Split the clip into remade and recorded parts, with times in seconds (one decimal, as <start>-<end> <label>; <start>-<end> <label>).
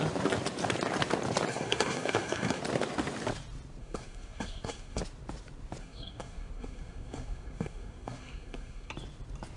0.0-1.5 recorded; 1.5-2.6 remade; 2.6-3.8 recorded; 3.8-5.0 remade; 5.0-5.8 recorded; 5.8-8.9 remade; 8.9-9.6 recorded